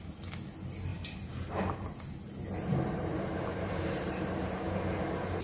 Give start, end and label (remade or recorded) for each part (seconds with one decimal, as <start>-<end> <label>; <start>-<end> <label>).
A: 0.0-0.9 recorded; 0.9-1.6 remade; 1.6-2.7 recorded; 2.7-4.5 remade; 4.5-5.4 recorded